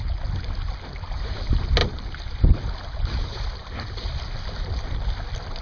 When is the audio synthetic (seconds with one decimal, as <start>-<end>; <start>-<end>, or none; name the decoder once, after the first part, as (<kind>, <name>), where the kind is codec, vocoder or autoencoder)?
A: none